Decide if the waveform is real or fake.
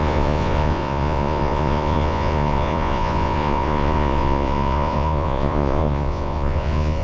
fake